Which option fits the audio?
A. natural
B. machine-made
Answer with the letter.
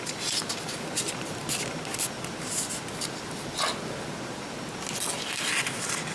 A